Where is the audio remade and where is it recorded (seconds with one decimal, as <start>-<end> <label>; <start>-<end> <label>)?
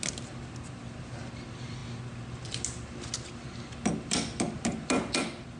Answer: 0.0-5.6 recorded